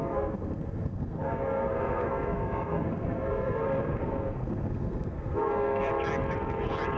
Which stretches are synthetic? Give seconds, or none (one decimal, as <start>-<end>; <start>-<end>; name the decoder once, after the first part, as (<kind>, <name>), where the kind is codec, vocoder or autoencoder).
0.0-5.9 (codec, SNAC)